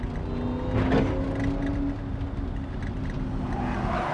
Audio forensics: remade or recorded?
recorded